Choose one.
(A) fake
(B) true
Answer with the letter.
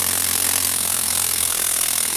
A